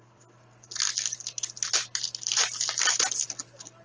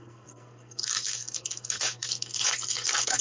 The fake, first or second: second